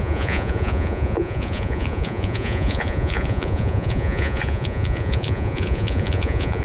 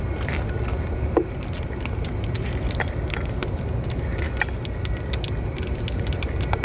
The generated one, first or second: first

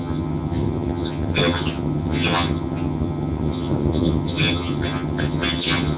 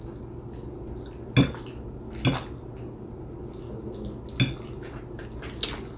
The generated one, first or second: first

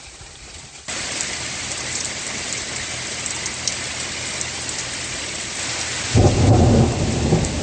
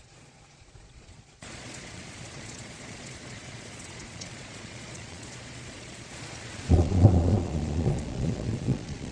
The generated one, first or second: second